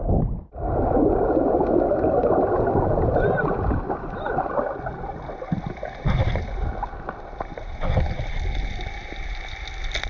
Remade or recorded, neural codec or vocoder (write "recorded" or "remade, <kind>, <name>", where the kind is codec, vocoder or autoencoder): recorded